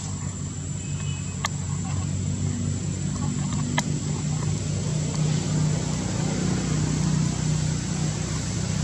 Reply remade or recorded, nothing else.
recorded